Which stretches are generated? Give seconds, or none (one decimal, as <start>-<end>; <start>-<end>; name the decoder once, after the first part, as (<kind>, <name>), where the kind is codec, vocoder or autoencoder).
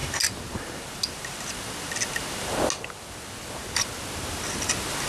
none